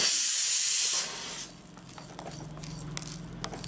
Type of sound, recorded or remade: recorded